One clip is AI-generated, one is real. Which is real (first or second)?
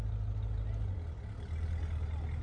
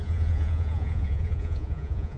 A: first